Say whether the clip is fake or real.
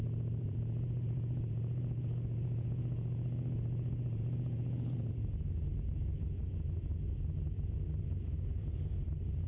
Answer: fake